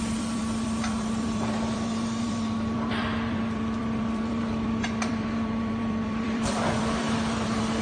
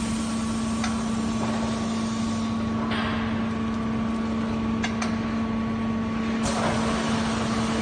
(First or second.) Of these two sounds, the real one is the second